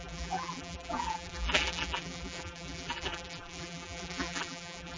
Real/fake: fake